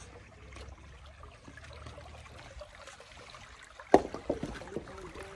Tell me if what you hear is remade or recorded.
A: recorded